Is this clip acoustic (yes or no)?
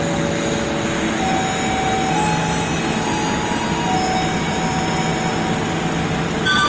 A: yes